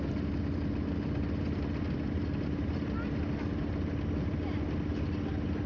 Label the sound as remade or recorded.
recorded